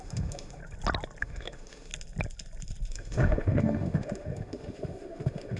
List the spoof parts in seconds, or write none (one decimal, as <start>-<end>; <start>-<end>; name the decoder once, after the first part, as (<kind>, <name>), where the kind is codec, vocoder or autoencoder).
0.0-0.6 (autoencoder, DAC-VAE); 1.2-1.9; 2.9-5.6